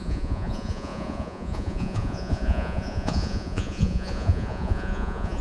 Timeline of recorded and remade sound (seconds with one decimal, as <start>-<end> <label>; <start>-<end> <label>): 0.0-5.4 remade